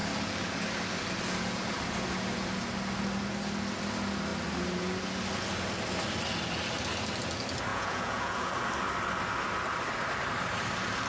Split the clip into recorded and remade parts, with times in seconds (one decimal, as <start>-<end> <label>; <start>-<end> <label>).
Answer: 0.0-7.7 recorded; 7.7-8.5 remade; 8.5-11.1 recorded